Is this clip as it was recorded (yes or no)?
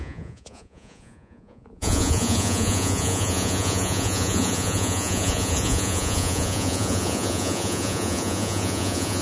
no